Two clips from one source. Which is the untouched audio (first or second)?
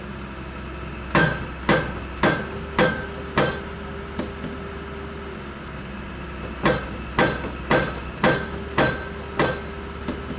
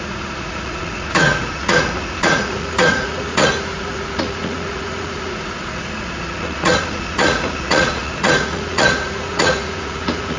first